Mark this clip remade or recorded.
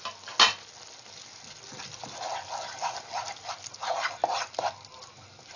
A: recorded